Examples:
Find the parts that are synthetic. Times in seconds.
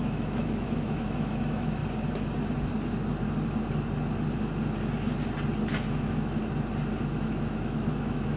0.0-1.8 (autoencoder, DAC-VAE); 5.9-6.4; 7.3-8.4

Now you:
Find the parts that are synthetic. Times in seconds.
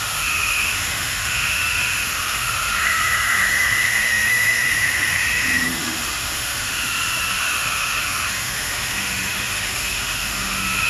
0.0-10.9 (autoencoder, DAC-VAE)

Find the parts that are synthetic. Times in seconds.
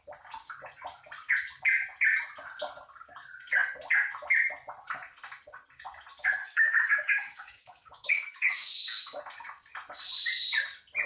6.4-9.2 (autoencoder, DAC-VAE)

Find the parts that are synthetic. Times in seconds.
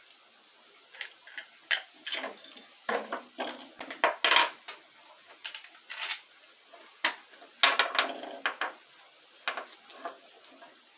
none